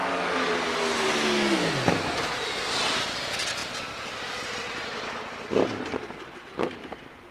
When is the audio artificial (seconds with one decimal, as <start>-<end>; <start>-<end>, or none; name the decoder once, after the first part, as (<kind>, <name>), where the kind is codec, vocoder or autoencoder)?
3.6-7.3 (vocoder, BigVGAN v2)